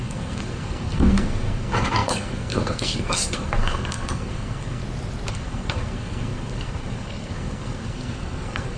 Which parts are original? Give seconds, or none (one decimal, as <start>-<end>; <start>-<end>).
4.8-5.3